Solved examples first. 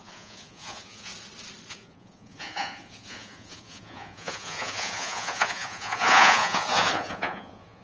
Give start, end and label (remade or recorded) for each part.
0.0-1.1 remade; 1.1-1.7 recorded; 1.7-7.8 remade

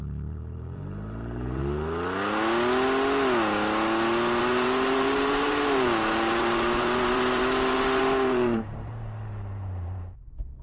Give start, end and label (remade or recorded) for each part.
0.0-1.6 remade; 1.6-4.4 recorded; 4.4-10.6 remade

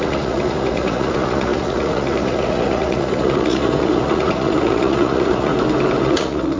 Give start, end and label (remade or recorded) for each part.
0.0-5.5 remade; 5.5-6.0 recorded; 6.0-6.6 remade

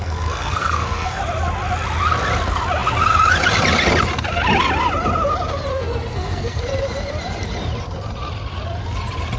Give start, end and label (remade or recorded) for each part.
0.0-1.2 remade; 1.2-5.7 recorded; 5.7-6.6 remade; 6.6-9.4 recorded

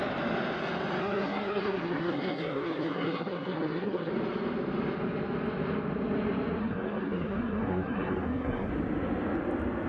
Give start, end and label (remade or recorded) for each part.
0.0-1.0 recorded; 1.0-4.1 remade; 4.1-6.6 recorded; 6.6-8.7 remade; 8.7-9.9 recorded

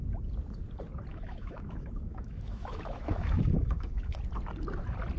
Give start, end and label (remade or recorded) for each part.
0.0-1.1 recorded; 1.1-4.2 remade; 4.2-5.2 recorded